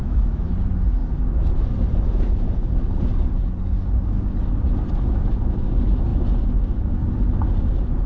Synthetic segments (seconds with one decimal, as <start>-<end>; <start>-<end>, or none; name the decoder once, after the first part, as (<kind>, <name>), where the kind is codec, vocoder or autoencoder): 0.0-0.5 (autoencoder, DAC-VAE)